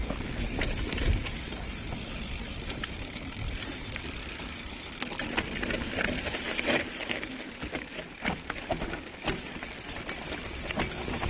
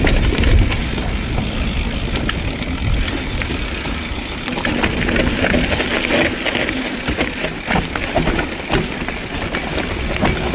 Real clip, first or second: second